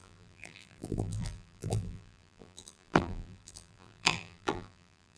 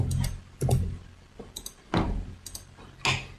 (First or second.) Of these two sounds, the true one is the second